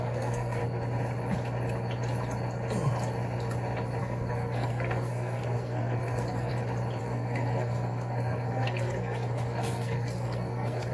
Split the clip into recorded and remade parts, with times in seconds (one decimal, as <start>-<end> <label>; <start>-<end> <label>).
0.0-0.6 remade; 0.6-4.0 recorded; 4.0-6.5 remade; 6.5-7.0 recorded; 7.0-10.9 remade